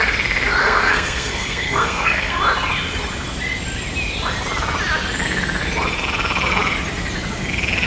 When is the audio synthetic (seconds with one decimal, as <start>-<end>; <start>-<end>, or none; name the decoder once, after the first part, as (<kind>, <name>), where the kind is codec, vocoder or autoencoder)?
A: 0.6-2.4 (codec, SNAC)